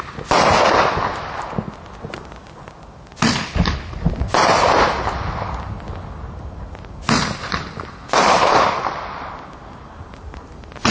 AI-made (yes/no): no